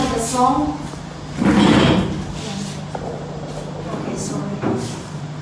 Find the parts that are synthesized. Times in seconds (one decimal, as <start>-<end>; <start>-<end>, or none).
none